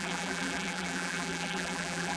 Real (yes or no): no